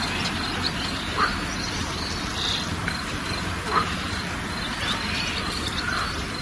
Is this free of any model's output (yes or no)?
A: yes